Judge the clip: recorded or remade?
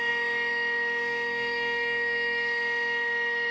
remade